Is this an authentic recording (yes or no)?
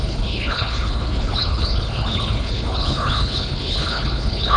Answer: no